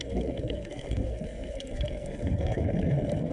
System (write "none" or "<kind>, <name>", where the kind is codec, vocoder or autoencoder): codec, SNAC